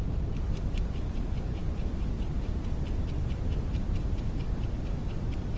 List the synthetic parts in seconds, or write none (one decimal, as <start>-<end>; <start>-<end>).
none